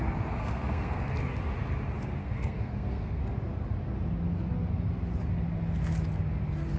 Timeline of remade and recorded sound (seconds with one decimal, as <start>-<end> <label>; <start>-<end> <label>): 0.0-0.4 recorded; 0.4-1.1 remade; 1.1-2.2 recorded; 2.2-3.2 remade; 3.2-6.8 recorded